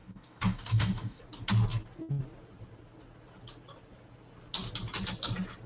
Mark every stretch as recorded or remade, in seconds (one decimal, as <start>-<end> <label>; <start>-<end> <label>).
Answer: 0.0-1.2 remade; 1.2-5.7 recorded